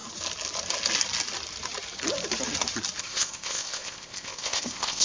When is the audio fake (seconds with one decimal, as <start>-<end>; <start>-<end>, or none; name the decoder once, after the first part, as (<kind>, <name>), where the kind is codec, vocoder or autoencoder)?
3.0-5.0 (codec, ZipCodec)